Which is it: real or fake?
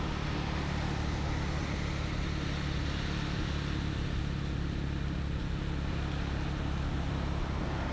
real